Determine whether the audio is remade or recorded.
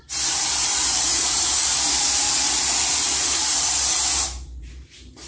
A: remade